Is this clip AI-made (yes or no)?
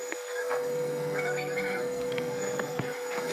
yes